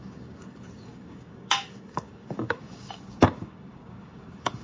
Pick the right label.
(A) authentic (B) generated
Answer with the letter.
B